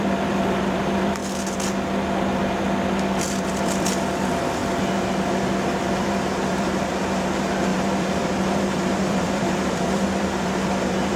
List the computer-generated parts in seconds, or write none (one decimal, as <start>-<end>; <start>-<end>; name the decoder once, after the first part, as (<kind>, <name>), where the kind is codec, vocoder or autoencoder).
0.0-1.2 (vocoder, BigVGAN v2); 3.0-4.6; 5.8-11.2